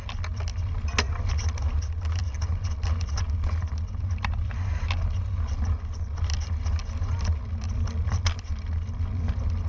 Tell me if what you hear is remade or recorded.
recorded